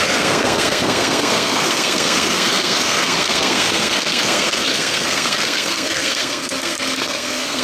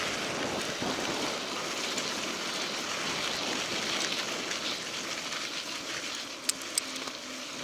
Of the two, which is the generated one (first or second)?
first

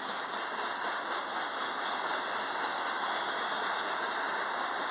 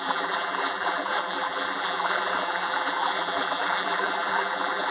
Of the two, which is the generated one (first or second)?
second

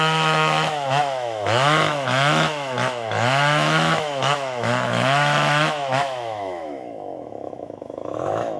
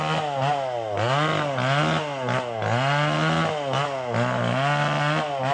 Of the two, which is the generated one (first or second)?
first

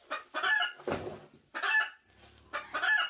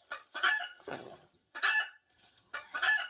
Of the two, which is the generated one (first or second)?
second